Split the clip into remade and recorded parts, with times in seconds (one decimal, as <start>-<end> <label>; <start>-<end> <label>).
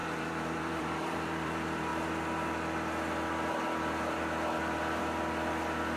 0.0-1.9 remade; 1.9-5.0 recorded; 5.0-6.0 remade